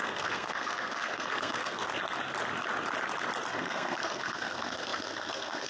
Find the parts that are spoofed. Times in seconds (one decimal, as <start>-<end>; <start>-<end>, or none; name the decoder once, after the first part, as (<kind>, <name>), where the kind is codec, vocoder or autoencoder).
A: 0.0-1.9 (codec, SNAC); 3.5-5.7